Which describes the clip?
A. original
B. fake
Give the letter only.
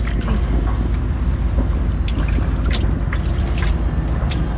A